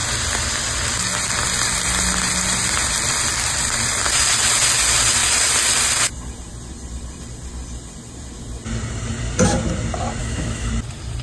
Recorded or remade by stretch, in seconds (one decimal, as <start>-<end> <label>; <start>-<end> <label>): 0.0-10.2 recorded; 10.2-10.7 remade; 10.7-11.2 recorded